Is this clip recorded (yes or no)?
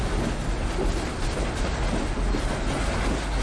yes